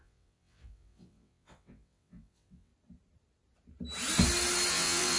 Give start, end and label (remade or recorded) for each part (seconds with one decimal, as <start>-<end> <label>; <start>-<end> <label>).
0.0-2.7 remade; 2.7-4.7 recorded; 4.7-5.2 remade